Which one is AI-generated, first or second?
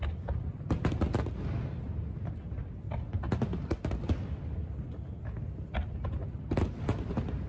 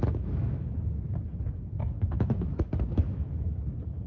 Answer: second